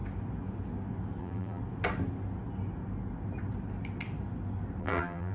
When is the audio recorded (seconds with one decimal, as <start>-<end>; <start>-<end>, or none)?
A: 0.0-1.2; 1.6-4.8